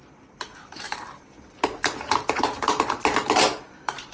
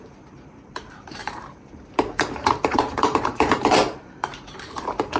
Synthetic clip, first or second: second